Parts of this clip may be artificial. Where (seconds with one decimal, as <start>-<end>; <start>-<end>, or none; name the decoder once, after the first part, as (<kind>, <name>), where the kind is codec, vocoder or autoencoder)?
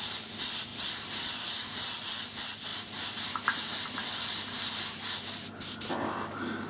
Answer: 0.7-1.4 (vocoder, BigVGAN v2)